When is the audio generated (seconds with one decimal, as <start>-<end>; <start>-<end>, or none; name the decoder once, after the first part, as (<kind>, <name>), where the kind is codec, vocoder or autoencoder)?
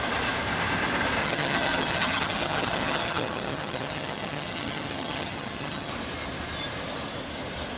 1.2-5.9 (vocoder, HiFi-GAN)